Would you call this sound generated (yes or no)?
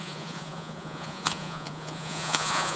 yes